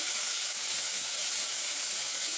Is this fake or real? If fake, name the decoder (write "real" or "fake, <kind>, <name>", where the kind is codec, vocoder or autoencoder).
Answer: fake, codec, DAC